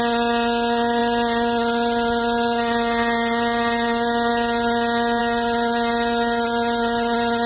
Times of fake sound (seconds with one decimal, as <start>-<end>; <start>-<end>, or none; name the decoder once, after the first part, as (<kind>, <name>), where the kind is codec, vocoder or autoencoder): none